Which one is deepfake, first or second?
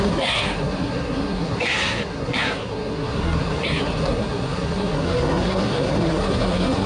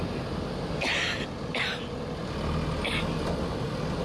first